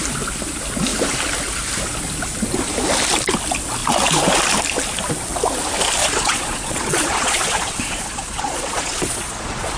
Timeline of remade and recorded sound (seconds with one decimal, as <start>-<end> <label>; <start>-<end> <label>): 0.0-6.0 recorded; 6.0-9.8 remade

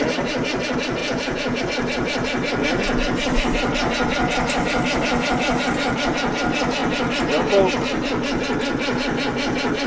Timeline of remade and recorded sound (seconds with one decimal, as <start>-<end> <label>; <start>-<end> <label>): 0.0-1.0 recorded; 1.0-1.6 remade; 1.6-9.9 recorded

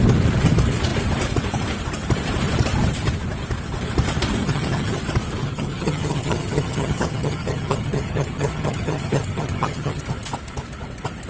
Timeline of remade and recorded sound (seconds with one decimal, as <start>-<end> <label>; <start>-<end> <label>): 0.0-4.4 recorded; 4.4-5.0 remade; 5.0-5.4 recorded; 5.4-10.0 remade; 10.0-11.3 recorded

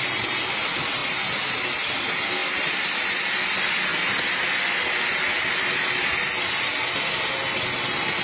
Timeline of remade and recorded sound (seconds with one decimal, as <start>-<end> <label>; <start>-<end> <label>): 0.0-8.2 recorded

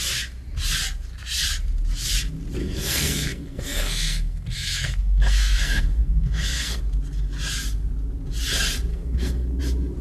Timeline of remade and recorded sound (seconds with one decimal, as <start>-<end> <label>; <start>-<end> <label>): 0.0-2.6 recorded; 2.6-6.8 remade; 6.8-8.9 recorded; 8.9-9.6 remade; 9.6-10.0 recorded

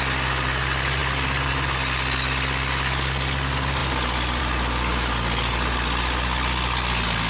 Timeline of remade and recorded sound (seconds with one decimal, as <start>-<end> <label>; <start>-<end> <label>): 0.0-7.3 recorded

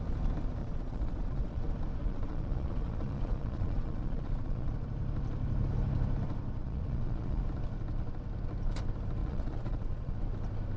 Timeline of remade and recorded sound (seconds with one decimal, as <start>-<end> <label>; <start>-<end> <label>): 0.0-0.6 recorded; 0.6-1.6 remade; 1.6-2.0 recorded; 2.0-4.7 remade; 4.7-6.6 recorded; 6.6-7.4 remade; 7.4-9.2 recorded; 9.2-10.1 remade; 10.1-10.8 recorded

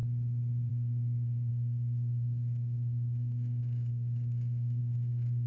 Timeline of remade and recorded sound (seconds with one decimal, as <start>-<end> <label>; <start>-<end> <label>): 0.0-0.7 recorded; 0.7-5.5 remade